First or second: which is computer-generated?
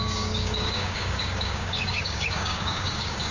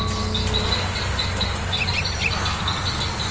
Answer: first